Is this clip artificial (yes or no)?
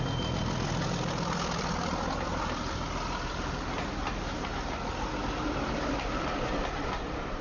no